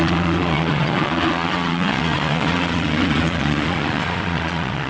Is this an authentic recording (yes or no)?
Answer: no